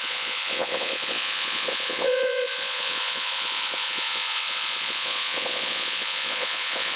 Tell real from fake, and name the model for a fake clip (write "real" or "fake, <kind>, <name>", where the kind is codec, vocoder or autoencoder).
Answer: fake, vocoder, Vocos